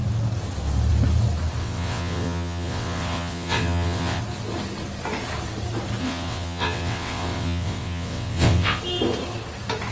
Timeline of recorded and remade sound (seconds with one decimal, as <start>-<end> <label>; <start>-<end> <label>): 0.0-1.6 recorded; 1.6-4.2 remade; 4.2-6.0 recorded; 6.0-8.8 remade; 8.8-9.9 recorded